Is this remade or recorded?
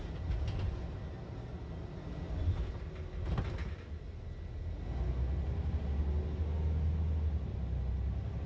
recorded